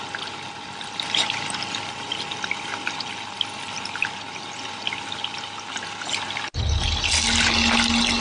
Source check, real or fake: real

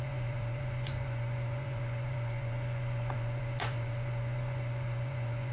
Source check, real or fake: fake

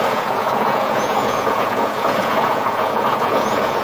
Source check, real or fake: fake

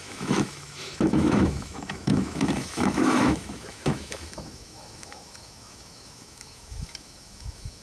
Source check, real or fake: fake